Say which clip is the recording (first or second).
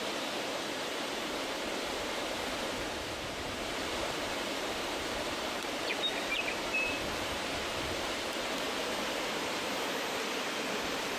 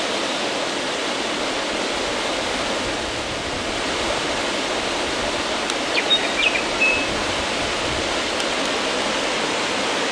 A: second